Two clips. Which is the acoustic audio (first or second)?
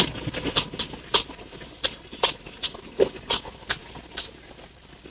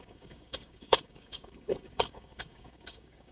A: first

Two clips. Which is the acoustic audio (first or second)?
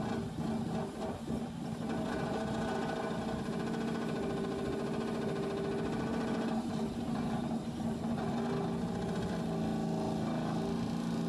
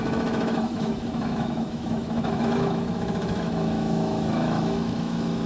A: first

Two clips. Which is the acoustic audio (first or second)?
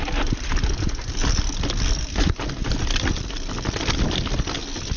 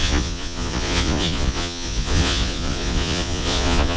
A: first